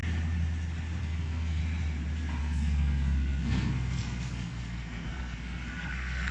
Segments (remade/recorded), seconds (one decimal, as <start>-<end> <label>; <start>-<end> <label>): 0.0-1.0 recorded; 1.0-1.6 remade; 1.6-2.4 recorded; 2.4-6.3 remade